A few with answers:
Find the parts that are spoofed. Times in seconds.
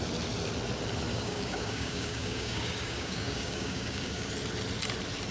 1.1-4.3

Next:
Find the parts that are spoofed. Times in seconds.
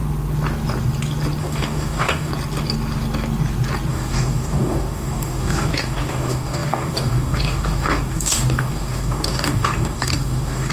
1.4-2.3; 3.9-10.7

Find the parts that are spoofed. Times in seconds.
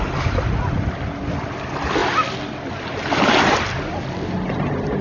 none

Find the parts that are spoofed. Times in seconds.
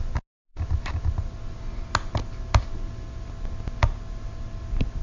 none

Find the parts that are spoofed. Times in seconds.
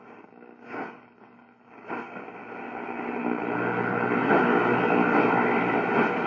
0.0-2.4